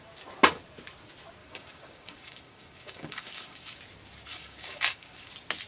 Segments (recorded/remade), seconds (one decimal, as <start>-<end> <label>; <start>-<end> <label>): 0.0-1.4 recorded; 1.4-3.8 remade; 3.8-4.3 recorded; 4.3-5.3 remade; 5.3-5.7 recorded